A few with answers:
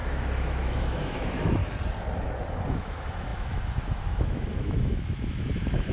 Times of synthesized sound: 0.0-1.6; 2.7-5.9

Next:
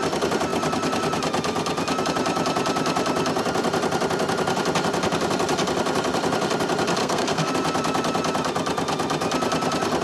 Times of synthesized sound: 7.0-7.5

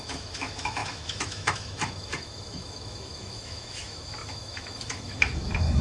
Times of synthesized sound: 0.0-5.8

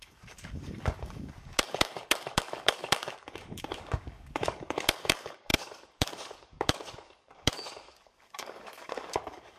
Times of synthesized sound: 0.0-9.6

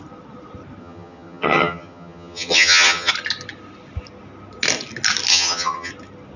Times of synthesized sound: 0.8-3.1; 5.3-5.9

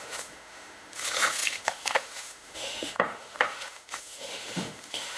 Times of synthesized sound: 0.0-5.2

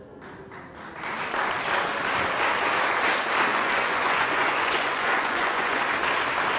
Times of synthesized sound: 3.5-5.8

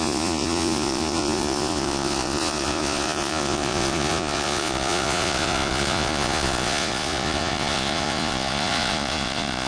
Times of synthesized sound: 0.0-9.7